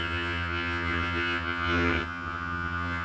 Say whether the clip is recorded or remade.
remade